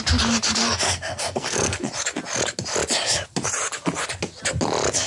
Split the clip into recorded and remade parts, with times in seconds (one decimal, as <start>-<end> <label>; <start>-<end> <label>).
0.0-0.6 recorded; 0.6-1.9 remade; 1.9-5.1 recorded